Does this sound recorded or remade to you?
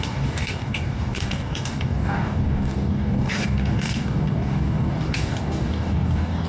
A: remade